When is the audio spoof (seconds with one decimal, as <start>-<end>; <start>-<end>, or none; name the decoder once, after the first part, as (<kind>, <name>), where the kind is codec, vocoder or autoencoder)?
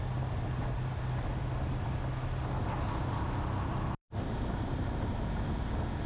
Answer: 4.0-5.2 (vocoder, BigVGAN v2)